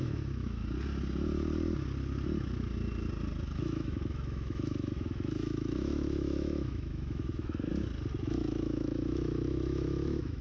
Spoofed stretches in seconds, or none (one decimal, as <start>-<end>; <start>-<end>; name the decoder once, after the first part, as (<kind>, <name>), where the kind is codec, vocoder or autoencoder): 0.0-0.6 (autoencoder, DAC-VAE); 3.6-7.7; 8.2-10.4